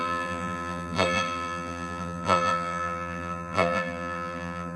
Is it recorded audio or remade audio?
remade